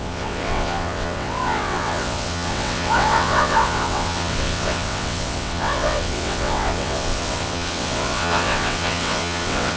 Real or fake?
fake